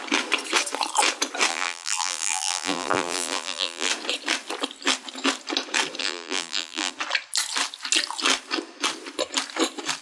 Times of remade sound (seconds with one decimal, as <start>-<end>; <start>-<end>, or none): 1.5-3.9; 6.0-6.9